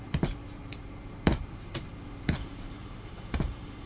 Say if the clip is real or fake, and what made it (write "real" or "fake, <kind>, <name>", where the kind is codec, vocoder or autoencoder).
fake, vocoder, BigVGAN v2